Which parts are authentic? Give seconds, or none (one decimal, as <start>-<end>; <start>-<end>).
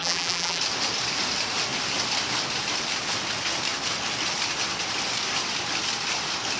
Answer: 0.6-6.6